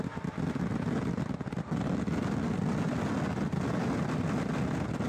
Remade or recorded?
recorded